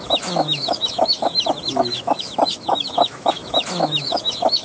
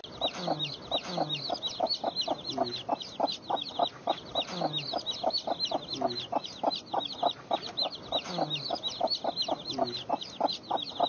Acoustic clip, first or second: second